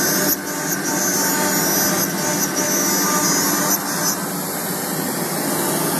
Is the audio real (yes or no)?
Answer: yes